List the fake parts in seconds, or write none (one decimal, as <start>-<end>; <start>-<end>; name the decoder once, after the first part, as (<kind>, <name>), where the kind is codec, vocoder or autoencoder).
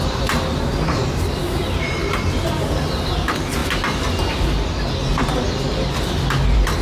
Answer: none